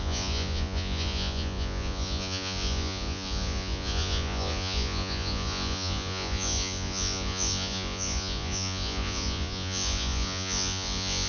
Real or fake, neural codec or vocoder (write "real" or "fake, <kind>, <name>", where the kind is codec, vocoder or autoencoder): fake, vocoder, Vocos